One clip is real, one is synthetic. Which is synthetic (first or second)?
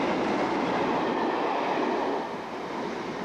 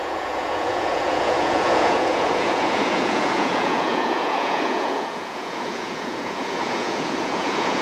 second